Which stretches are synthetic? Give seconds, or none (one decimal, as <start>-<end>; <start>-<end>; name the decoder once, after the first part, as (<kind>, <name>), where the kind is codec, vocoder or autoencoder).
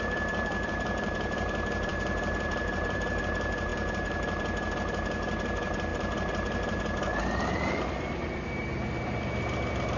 0.0-10.0 (vocoder, BigVGAN v2)